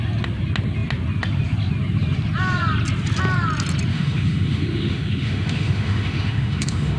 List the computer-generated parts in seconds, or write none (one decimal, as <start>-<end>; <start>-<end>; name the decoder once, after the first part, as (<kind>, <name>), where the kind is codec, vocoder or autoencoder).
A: 3.9-7.0 (autoencoder, DAC-VAE)